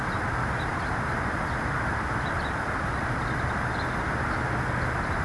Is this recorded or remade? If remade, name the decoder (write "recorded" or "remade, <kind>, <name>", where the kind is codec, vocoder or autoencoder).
recorded